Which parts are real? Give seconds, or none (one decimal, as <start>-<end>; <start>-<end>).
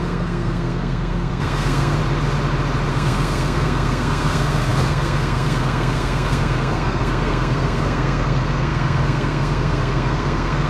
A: 2.0-2.9